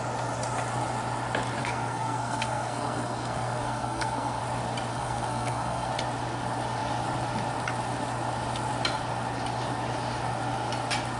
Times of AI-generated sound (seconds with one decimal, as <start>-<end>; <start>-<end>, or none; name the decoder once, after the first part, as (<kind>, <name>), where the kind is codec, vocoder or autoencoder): 1.6-4.4 (codec, SNAC); 4.9-5.9